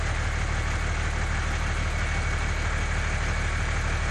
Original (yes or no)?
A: yes